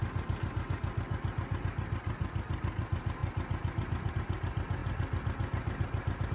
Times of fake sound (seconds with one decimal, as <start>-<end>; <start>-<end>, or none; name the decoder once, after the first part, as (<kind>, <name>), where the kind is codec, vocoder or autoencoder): none